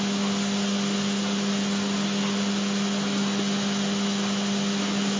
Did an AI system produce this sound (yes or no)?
no